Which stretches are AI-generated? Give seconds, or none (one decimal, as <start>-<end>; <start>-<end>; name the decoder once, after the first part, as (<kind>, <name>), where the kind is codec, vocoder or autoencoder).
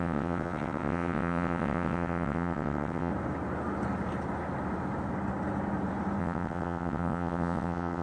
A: 0.0-3.1 (vocoder, WaveNeXt); 6.2-8.0